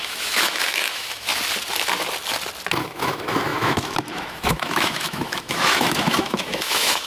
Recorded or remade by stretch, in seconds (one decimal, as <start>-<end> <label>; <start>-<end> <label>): 0.0-1.3 remade; 1.3-2.8 recorded; 2.8-7.1 remade

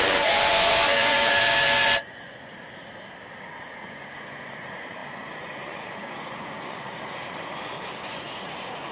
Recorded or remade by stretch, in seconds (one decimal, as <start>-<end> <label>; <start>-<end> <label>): 0.0-2.5 remade; 2.5-3.6 recorded; 3.6-8.9 remade

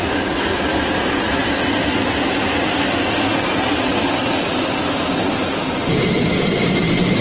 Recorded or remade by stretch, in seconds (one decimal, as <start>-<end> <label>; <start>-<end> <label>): 0.0-4.4 recorded; 4.4-7.2 remade

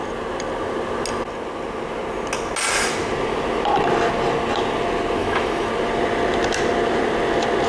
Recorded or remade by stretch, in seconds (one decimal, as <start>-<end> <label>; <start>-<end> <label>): 0.0-5.2 recorded; 5.2-5.7 remade; 5.7-7.7 recorded